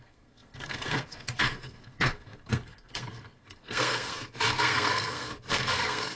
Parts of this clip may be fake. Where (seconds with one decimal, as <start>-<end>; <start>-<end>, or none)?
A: 0.0-6.2